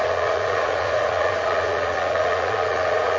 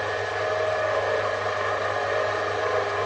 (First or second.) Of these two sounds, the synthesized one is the first